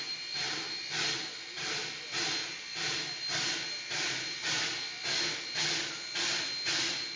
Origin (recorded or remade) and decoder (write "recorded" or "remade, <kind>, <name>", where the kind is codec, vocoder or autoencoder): recorded